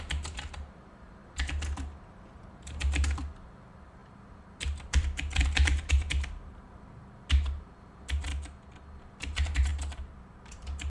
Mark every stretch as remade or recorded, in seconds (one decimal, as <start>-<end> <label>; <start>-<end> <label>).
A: 0.0-1.2 remade; 1.2-2.5 recorded; 2.5-8.3 remade; 8.3-9.0 recorded; 9.0-10.9 remade